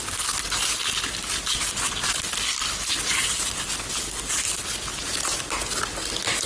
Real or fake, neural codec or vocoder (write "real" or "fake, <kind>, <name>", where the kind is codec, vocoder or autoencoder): real